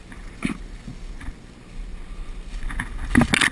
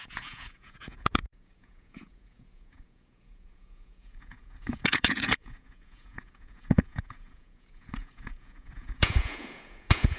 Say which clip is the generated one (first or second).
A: second